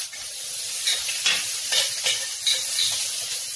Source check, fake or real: real